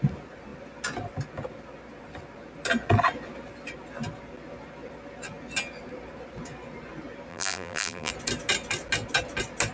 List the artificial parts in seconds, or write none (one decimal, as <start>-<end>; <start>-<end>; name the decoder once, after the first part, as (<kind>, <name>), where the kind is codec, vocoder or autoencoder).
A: 7.3-8.1 (vocoder, BigVGAN v2)